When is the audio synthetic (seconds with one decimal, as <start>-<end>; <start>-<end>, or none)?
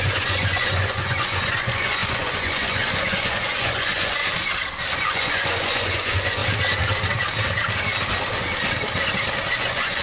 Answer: 0.0-4.2; 5.1-6.4; 9.6-10.0